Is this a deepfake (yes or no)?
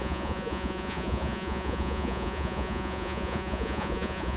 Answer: yes